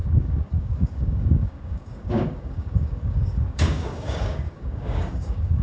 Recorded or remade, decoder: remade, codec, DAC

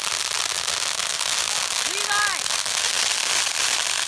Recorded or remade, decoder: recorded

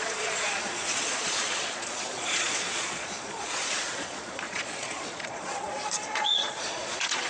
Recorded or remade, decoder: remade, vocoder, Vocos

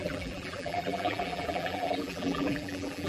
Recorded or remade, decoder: remade, vocoder, BigVGAN v2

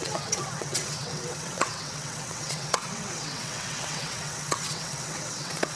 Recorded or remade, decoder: remade, vocoder, WaveNeXt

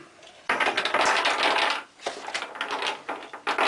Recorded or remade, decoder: recorded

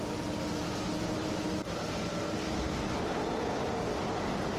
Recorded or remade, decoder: recorded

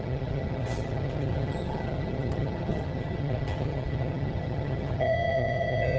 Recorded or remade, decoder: remade, vocoder, HiFi-GAN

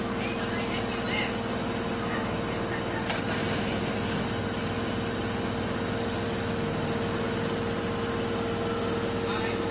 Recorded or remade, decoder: recorded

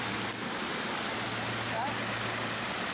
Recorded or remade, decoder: recorded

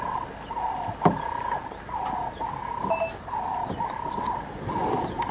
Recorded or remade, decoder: recorded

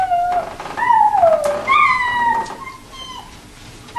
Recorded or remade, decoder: recorded